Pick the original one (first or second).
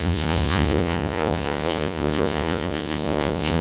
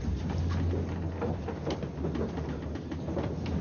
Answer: second